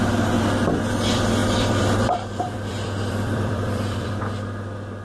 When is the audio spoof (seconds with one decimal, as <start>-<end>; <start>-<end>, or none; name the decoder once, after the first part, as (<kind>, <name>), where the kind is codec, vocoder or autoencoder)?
1.4-4.2 (vocoder, BigVGAN v2)